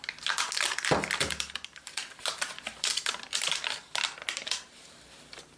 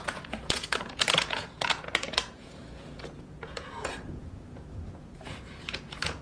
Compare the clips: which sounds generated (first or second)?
second